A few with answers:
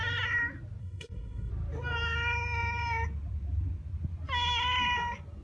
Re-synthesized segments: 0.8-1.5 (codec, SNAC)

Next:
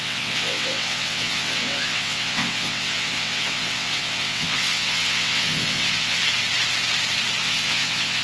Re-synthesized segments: 0.0-6.2 (vocoder, WaveNeXt); 7.4-8.2

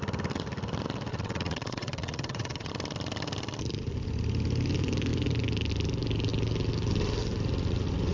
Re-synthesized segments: 1.1-2.7 (vocoder, Vocos)